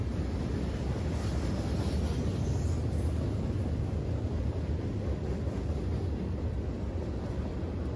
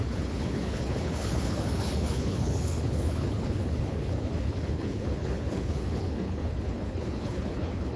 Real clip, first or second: first